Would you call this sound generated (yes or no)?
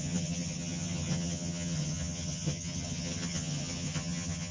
yes